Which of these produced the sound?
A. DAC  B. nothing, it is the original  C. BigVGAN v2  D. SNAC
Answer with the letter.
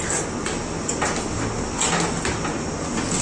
B